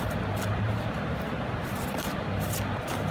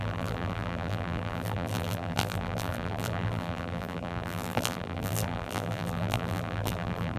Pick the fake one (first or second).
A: second